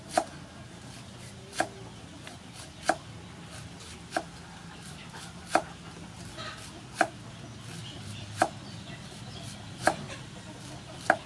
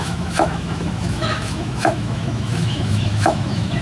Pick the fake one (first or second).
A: second